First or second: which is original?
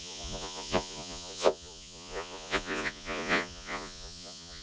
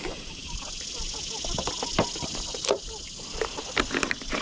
second